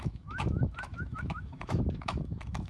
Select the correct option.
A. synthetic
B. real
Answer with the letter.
A